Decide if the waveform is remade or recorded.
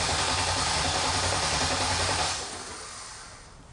recorded